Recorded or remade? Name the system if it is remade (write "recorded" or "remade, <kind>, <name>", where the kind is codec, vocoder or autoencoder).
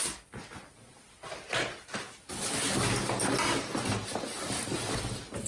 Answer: recorded